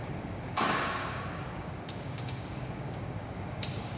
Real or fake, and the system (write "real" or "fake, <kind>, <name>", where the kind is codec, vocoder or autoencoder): fake, codec, DAC